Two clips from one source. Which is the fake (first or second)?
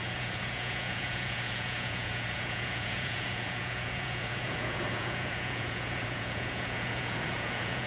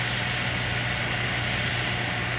first